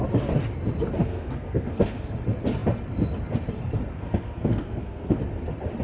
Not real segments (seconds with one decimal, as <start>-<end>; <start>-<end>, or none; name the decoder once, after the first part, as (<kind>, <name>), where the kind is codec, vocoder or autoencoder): 1.0-2.1 (codec, SNAC); 3.9-5.2